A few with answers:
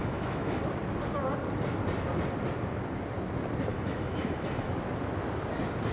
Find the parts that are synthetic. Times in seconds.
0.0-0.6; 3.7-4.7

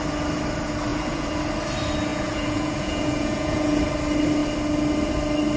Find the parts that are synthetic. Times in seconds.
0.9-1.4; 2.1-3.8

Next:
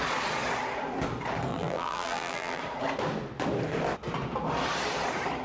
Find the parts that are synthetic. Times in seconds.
1.5-2.6

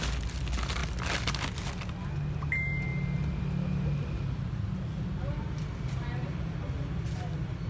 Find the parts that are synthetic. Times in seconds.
none

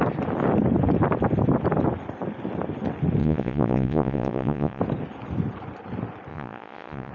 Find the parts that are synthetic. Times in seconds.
3.2-4.8; 6.3-7.1